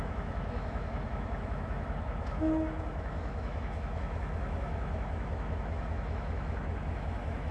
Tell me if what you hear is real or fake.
fake